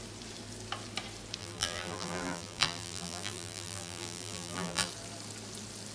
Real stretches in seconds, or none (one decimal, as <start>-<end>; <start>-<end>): 0.0-1.4; 4.9-5.9